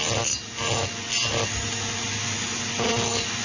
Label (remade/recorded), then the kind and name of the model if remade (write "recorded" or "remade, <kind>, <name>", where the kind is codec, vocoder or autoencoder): recorded